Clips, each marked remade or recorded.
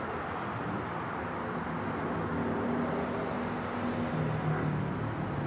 recorded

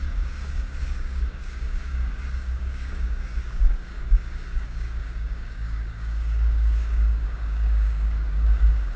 remade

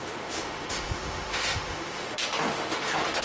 remade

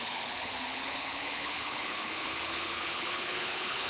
remade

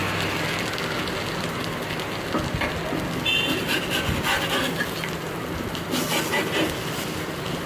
recorded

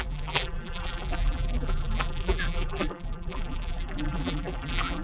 remade